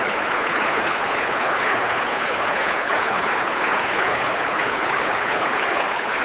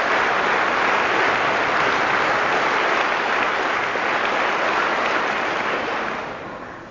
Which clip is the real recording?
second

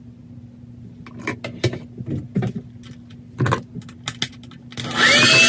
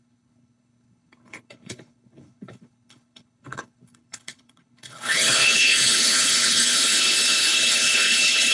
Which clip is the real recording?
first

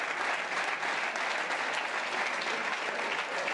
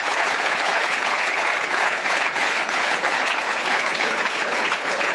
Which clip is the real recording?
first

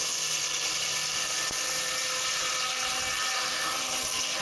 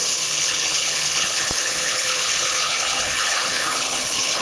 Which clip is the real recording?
first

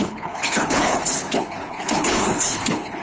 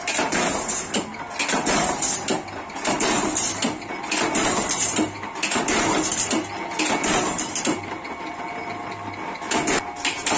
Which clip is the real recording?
second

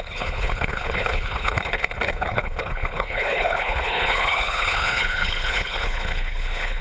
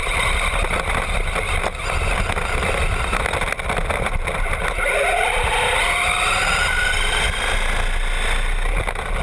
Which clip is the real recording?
second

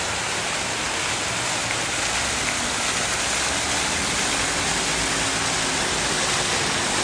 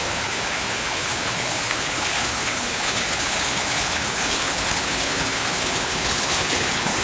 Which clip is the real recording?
first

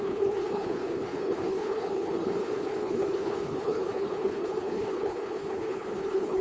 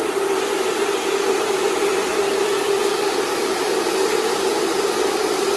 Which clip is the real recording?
second